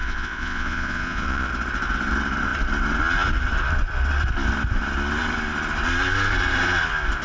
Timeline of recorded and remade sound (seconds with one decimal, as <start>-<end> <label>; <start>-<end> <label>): 0.0-1.5 remade; 1.5-7.2 recorded